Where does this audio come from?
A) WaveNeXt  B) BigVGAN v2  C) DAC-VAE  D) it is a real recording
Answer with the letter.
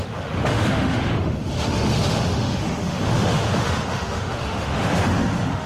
C